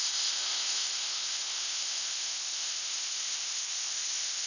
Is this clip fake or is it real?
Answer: fake